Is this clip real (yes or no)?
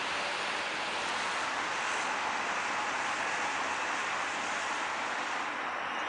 yes